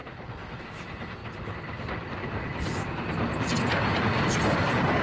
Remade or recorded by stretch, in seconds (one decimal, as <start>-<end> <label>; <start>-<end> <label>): 0.0-5.0 recorded